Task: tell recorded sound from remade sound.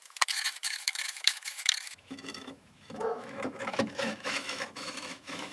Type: remade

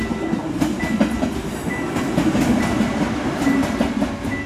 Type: recorded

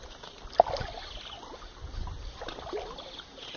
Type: recorded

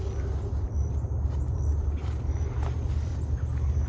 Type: recorded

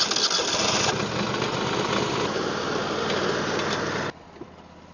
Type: recorded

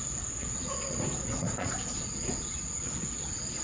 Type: remade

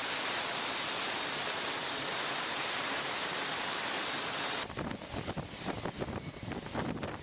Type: remade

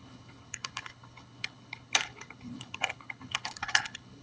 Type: remade